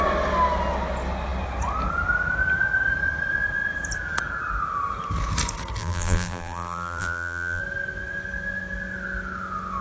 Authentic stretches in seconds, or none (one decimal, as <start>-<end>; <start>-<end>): 0.0-5.8; 7.6-9.8